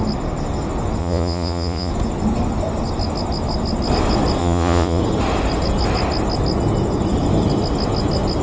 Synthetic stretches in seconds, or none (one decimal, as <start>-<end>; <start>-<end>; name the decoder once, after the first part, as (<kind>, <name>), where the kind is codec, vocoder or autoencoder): 1.0-1.9 (vocoder, Vocos); 4.4-5.0